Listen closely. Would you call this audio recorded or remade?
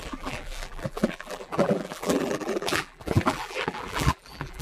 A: remade